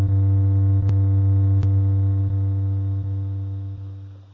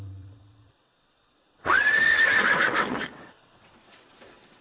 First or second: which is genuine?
first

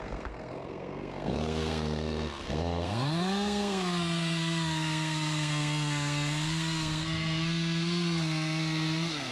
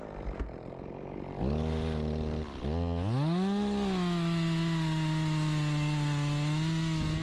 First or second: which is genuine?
second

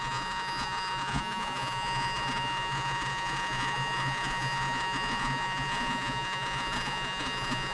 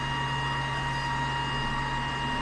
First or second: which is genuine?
second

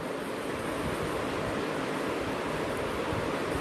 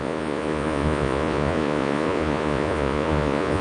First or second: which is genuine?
first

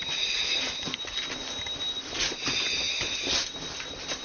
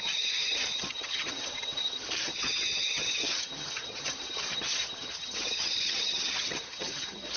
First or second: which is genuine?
first